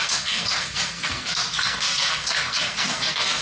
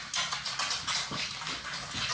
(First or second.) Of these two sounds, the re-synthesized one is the first